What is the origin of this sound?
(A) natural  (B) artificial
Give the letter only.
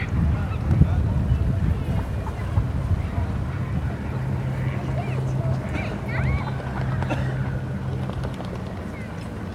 A